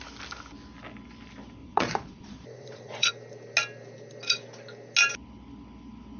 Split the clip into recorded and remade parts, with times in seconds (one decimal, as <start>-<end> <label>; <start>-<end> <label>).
0.0-1.6 recorded; 1.6-3.1 remade; 3.1-6.2 recorded